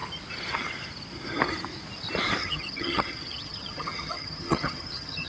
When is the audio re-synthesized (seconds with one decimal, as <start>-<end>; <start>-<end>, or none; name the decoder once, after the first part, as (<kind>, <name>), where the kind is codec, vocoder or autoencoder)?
2.4-5.3 (vocoder, HiFi-GAN)